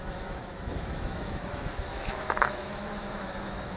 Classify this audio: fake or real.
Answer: fake